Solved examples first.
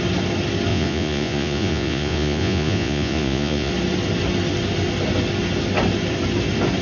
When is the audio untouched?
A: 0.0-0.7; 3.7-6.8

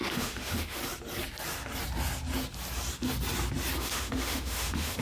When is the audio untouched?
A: 0.8-3.8

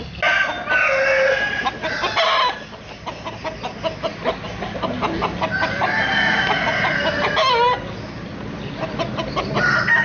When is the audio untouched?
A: 0.0-10.0